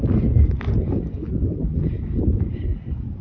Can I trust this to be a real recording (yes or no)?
yes